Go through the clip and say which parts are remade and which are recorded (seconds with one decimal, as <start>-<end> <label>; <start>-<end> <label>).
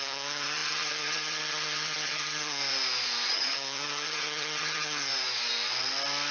0.0-2.6 remade; 2.6-3.3 recorded; 3.3-5.1 remade; 5.1-6.3 recorded